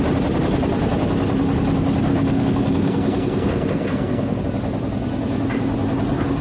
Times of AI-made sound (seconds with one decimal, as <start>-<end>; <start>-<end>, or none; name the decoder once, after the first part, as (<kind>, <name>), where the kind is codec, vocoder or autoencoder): 2.1-4.4 (codec, SNAC)